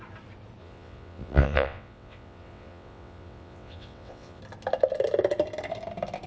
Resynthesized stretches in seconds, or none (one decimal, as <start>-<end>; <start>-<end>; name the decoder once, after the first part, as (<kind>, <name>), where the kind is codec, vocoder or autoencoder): 0.6-4.4 (vocoder, WaveNeXt)